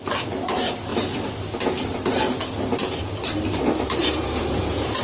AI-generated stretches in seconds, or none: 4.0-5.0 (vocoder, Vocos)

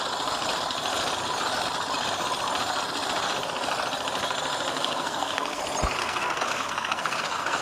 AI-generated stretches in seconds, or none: 4.7-5.6 (codec, SNAC); 6.0-7.6

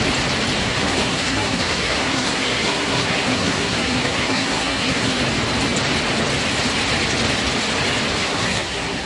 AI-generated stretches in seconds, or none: 0.6-5.2 (codec, SNAC); 8.2-9.1

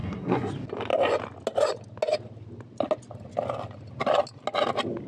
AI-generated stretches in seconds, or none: 0.0-0.5 (codec, SNAC)

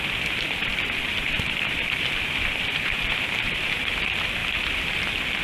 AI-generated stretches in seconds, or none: 0.6-3.8 (vocoder, BigVGAN v2)

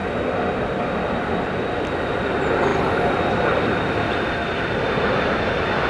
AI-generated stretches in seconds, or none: none

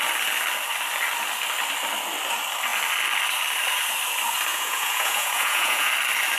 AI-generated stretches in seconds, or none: 4.5-5.9 (vocoder, Vocos)